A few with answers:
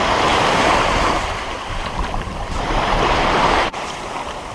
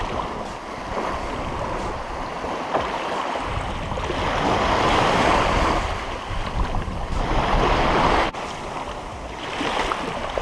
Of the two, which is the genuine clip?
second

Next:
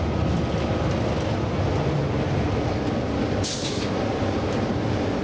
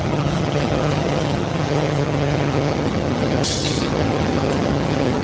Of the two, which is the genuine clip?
first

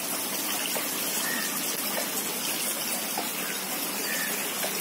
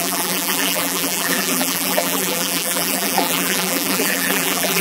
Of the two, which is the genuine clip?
first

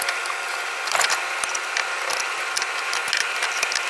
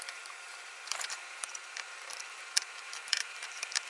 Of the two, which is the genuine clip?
first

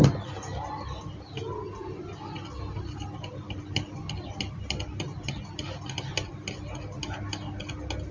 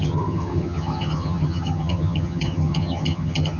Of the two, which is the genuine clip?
first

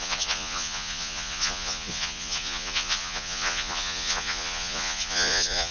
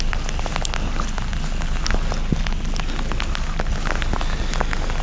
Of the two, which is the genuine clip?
second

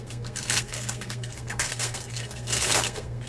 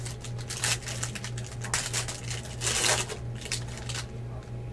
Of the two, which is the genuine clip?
second